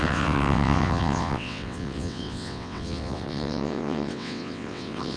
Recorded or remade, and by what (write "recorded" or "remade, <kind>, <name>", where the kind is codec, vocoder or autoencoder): remade, vocoder, WaveNeXt